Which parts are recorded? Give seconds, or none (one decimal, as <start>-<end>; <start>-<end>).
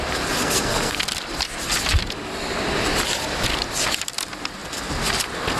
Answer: 0.0-0.4; 1.0-5.6